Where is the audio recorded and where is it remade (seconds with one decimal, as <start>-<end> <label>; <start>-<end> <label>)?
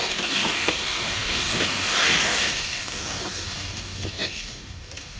0.0-5.2 remade